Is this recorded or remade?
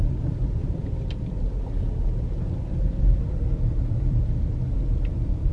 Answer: remade